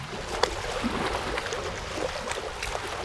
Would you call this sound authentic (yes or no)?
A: yes